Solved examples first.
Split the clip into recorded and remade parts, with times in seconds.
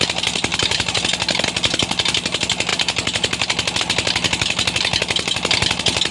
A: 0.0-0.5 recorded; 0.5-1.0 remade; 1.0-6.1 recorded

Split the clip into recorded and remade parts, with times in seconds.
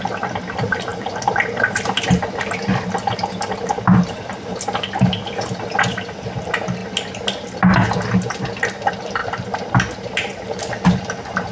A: 0.0-0.9 recorded; 0.9-2.1 remade; 2.1-9.2 recorded; 9.2-10.6 remade; 10.6-11.5 recorded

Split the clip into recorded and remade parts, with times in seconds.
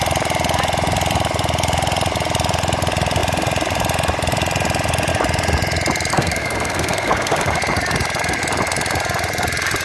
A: 0.0-6.1 recorded; 6.1-7.6 remade; 7.6-9.8 recorded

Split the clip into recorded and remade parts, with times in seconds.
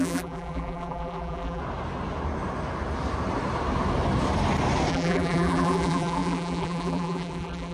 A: 0.0-1.6 remade; 1.6-4.9 recorded; 4.9-7.7 remade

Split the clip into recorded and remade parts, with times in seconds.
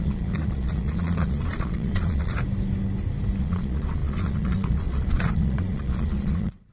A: 0.0-2.3 remade; 2.3-3.4 recorded; 3.4-6.7 remade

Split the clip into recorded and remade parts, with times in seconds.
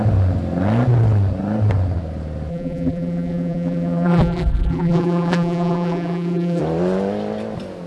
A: 0.0-2.5 recorded; 2.5-6.6 remade; 6.6-7.9 recorded